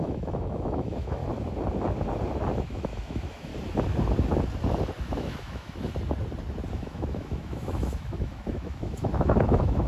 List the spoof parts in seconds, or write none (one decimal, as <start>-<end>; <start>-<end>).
0.0-1.2; 2.5-3.5; 5.0-5.9; 6.7-9.9

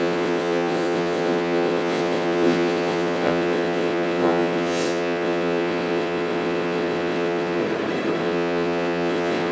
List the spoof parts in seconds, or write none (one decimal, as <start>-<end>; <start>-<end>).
0.0-7.6; 8.2-9.5

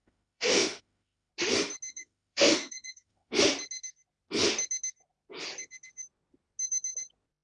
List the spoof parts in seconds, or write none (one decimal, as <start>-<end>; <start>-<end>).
0.0-1.3; 1.9-3.4